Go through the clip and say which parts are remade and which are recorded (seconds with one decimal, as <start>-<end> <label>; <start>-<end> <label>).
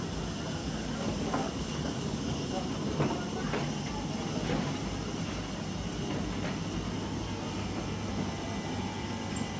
0.0-0.6 recorded; 0.6-2.5 remade; 2.5-9.6 recorded